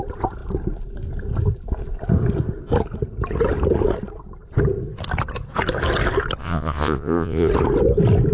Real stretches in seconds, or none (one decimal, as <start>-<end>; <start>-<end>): 0.0-6.4; 7.5-8.3